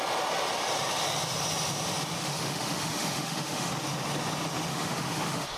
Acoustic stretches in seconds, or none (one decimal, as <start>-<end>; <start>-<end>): 0.0-2.2; 3.7-4.7